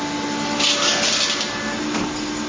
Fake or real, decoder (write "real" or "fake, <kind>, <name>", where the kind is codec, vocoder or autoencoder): real